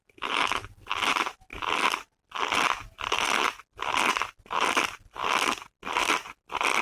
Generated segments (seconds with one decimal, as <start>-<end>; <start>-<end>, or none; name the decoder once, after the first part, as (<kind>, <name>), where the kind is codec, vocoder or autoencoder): none